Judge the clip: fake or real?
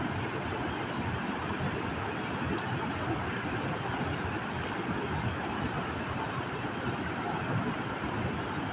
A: real